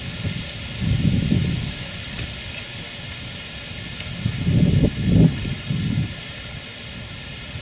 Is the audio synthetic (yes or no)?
no